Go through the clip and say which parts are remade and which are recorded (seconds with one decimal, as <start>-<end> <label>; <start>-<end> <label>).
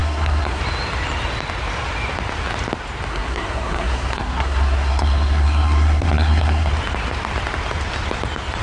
0.0-0.6 remade; 0.6-3.1 recorded; 3.1-6.7 remade; 6.7-8.6 recorded